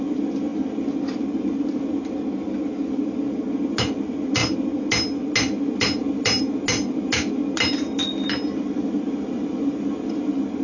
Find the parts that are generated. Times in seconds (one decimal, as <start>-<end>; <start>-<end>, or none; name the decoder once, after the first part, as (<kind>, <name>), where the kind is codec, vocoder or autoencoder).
none